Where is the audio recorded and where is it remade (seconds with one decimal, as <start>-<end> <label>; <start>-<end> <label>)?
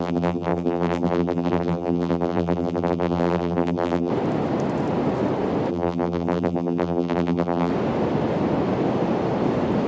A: 0.0-4.1 remade; 4.1-5.7 recorded; 5.7-7.7 remade; 7.7-9.9 recorded